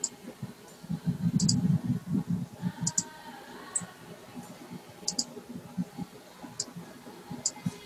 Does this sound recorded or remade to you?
recorded